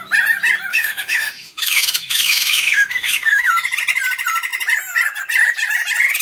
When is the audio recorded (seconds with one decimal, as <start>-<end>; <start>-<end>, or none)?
0.0-0.7; 3.5-6.2